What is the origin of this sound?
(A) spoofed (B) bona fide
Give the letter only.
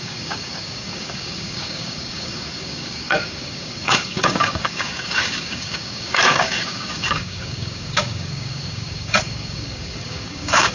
A